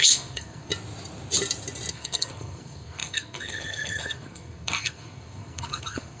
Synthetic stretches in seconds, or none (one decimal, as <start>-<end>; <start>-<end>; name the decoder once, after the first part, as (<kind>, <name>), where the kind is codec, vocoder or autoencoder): 0.0-0.7 (codec, SNAC); 1.9-6.2